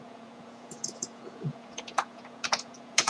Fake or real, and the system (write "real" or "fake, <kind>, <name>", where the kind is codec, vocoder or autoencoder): fake, vocoder, Vocos